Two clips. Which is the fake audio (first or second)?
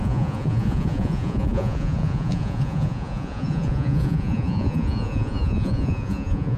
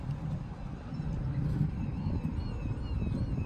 first